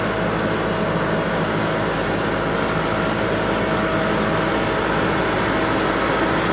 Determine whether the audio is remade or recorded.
recorded